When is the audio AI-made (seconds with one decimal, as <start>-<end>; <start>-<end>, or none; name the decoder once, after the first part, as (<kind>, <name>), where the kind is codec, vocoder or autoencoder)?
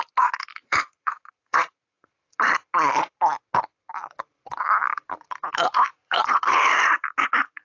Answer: 0.6-2.1 (vocoder, Vocos); 5.9-6.4